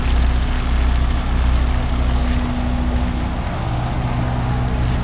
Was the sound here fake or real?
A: real